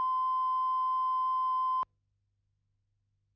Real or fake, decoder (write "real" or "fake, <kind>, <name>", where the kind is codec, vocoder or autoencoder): real